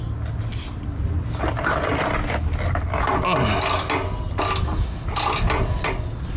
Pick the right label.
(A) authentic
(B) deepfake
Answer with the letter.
A